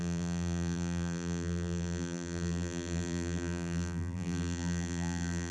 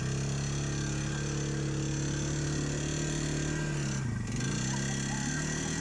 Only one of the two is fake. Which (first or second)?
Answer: first